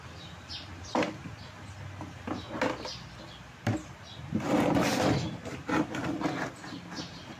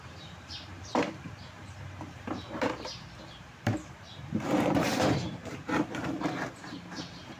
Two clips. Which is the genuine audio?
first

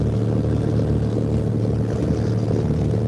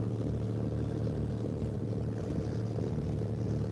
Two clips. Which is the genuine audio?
first